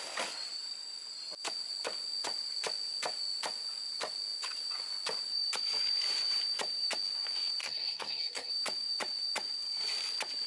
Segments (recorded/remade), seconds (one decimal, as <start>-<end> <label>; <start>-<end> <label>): 0.0-7.6 recorded; 7.6-8.5 remade; 8.5-10.5 recorded